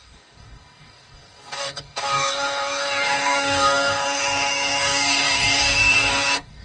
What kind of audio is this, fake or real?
fake